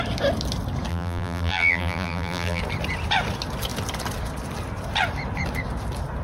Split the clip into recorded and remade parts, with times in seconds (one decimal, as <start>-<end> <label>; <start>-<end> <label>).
0.0-0.9 recorded; 0.9-2.6 remade; 2.6-6.2 recorded